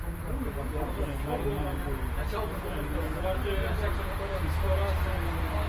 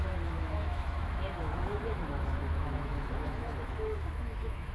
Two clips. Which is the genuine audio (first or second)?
first